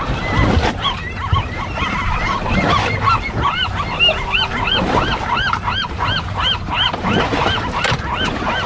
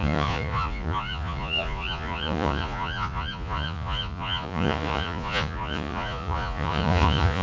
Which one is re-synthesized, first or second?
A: second